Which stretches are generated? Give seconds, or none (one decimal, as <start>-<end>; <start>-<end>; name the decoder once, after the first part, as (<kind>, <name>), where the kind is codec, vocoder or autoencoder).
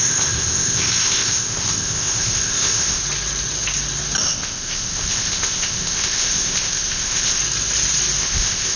0.0-3.0 (codec, ZipCodec); 4.2-7.4; 8.2-8.8